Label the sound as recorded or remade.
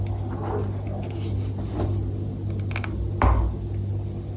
recorded